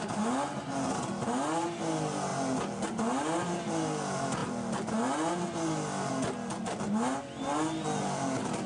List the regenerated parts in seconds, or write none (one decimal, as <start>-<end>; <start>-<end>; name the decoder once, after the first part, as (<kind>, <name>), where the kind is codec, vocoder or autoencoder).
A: none

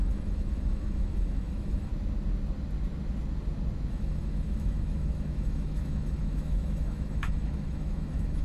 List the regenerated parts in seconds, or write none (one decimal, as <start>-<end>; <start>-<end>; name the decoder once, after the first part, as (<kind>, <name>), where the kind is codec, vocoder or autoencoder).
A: 0.0-1.9 (autoencoder, DAC-VAE); 3.9-8.4

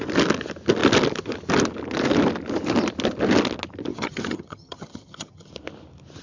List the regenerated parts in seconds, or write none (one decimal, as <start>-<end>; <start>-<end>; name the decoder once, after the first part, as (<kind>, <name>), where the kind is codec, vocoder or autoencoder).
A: 3.9-5.5 (vocoder, HiFi-GAN)

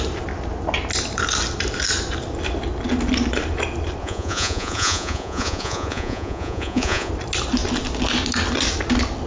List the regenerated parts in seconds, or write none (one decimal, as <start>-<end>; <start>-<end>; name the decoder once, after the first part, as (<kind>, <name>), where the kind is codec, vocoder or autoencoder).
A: 4.0-7.1 (vocoder, Vocos)